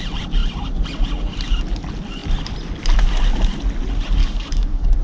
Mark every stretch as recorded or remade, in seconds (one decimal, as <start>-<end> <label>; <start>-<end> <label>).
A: 0.0-4.2 recorded; 4.2-5.0 remade